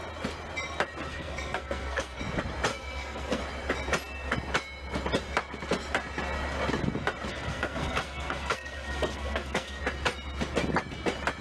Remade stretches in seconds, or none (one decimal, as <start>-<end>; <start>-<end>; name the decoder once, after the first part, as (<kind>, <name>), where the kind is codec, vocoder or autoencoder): 1.1-2.2 (codec, SNAC); 2.7-3.4; 7.3-9.8